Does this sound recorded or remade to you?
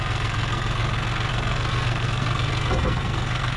remade